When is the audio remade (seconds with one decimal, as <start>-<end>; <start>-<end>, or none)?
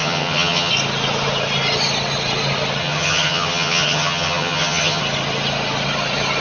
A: 0.0-0.7; 2.8-5.0